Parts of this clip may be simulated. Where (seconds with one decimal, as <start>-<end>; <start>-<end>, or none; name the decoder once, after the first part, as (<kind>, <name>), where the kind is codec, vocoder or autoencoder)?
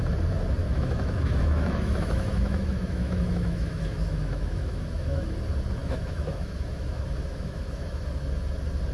0.6-5.3 (autoencoder, DAC-VAE); 5.8-8.0